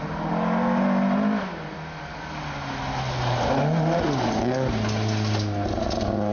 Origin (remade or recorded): recorded